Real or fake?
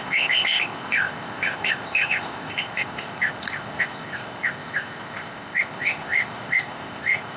fake